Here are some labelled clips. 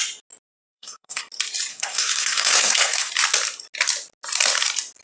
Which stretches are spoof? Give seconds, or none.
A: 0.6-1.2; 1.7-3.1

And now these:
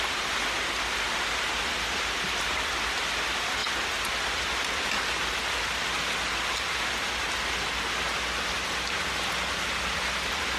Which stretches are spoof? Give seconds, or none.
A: none

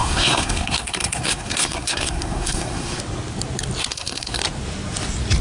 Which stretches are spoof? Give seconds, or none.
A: 0.0-3.0; 3.8-4.4

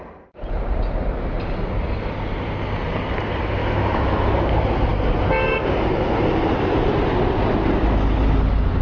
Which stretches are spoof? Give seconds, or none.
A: 3.6-4.5

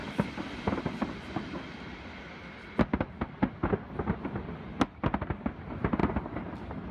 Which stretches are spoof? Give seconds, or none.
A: none